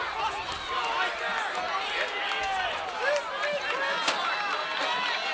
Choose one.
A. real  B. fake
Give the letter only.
A